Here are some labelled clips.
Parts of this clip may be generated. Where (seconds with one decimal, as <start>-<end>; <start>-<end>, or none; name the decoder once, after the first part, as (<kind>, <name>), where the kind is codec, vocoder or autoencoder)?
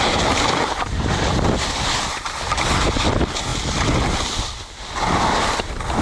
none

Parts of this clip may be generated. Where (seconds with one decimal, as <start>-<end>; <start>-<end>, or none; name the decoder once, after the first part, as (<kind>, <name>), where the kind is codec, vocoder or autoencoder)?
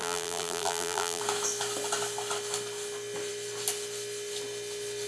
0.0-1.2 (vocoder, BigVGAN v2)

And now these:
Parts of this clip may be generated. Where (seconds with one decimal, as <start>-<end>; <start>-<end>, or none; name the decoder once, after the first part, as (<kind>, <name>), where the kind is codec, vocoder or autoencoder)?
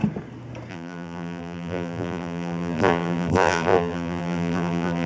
0.7-5.1 (vocoder, BigVGAN v2)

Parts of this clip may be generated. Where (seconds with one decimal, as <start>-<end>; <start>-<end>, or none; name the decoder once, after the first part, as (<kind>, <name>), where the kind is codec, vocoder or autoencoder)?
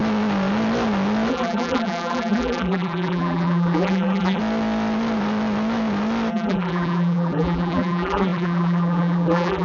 1.3-4.4 (vocoder, BigVGAN v2); 6.3-9.6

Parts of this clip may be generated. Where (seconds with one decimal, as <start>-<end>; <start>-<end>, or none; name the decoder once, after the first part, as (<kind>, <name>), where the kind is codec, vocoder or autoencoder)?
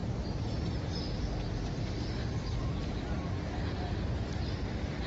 0.0-5.1 (vocoder, BigVGAN v2)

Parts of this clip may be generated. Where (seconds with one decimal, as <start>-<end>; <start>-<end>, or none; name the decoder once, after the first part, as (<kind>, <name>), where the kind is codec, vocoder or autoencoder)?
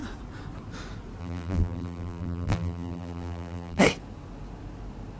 1.2-3.8 (vocoder, BigVGAN v2)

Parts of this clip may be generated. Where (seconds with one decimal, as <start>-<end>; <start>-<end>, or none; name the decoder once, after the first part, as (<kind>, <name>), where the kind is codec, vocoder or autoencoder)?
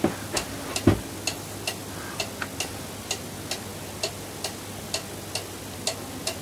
none